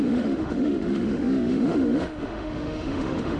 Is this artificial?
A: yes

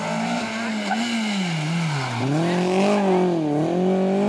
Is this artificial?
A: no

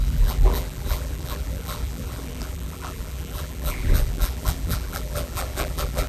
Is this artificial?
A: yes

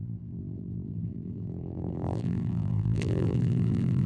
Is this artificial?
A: yes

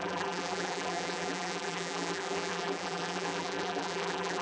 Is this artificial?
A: yes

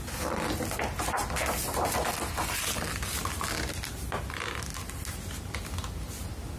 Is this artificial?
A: no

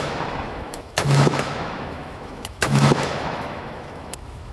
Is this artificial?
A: yes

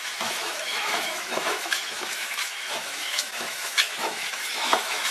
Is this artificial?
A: yes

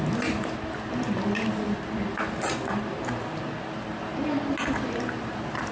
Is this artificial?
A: no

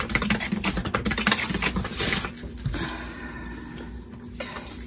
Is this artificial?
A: no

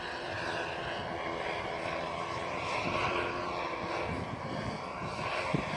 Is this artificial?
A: no